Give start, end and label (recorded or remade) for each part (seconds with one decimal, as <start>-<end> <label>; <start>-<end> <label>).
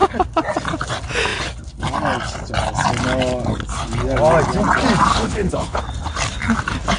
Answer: 0.0-5.1 recorded; 5.1-5.8 remade; 5.8-7.0 recorded